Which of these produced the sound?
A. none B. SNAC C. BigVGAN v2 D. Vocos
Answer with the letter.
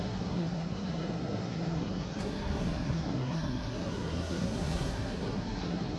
B